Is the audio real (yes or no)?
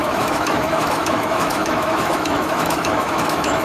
no